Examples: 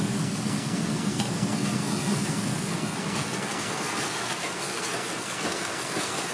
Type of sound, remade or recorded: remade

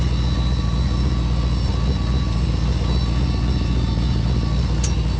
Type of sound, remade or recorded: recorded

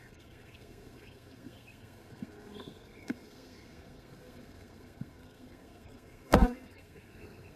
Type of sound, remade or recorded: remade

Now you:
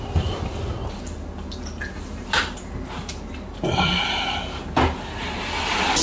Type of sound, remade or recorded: recorded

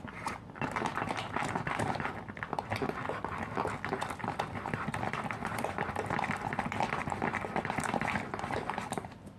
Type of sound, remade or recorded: recorded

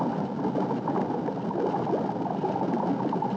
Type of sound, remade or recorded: recorded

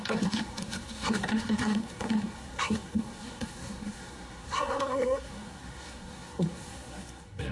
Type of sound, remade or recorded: remade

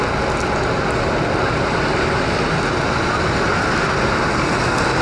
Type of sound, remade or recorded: recorded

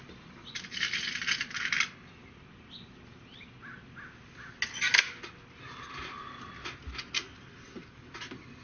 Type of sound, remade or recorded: recorded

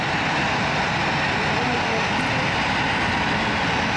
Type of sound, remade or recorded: recorded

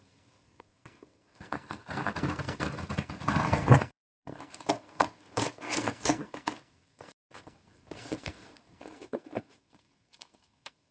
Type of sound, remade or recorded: remade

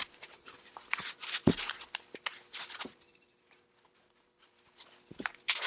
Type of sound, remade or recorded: recorded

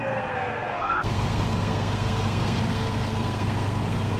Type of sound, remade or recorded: remade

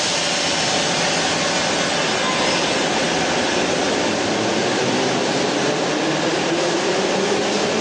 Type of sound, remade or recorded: recorded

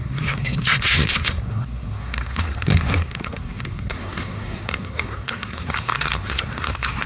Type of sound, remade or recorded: remade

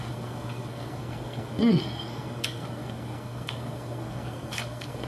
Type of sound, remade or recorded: remade